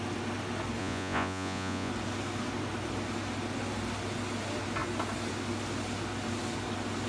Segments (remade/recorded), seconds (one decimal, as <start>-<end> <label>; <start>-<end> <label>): 0.0-0.8 recorded; 0.8-1.9 remade; 1.9-7.1 recorded